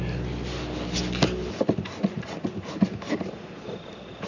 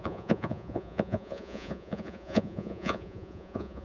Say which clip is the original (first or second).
first